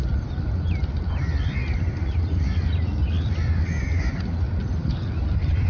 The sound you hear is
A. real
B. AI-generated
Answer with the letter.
A